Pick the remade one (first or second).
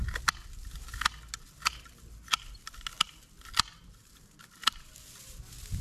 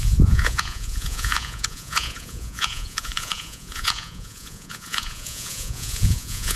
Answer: second